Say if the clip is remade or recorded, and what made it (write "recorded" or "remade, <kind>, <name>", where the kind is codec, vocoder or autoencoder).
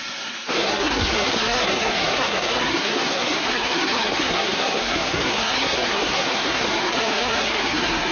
remade, codec, SNAC